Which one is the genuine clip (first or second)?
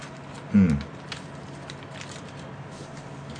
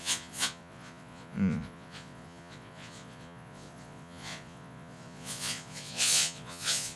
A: first